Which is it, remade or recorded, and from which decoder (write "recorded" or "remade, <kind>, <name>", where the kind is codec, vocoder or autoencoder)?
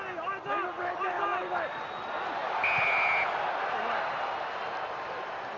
recorded